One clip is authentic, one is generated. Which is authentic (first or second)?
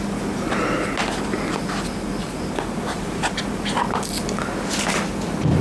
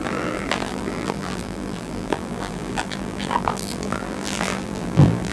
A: first